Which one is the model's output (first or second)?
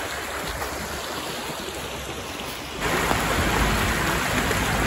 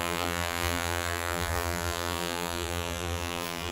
second